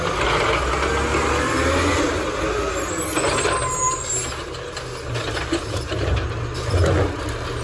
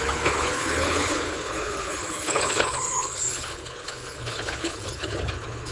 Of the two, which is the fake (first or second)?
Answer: second